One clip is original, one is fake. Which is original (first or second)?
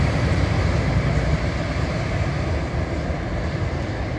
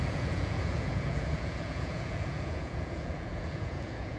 first